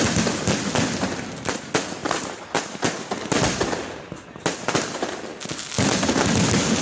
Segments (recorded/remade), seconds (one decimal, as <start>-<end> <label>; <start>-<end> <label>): 0.0-6.8 recorded